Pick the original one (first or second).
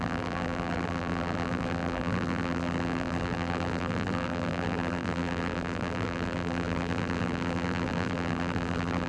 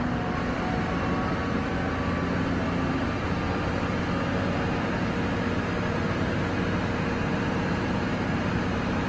second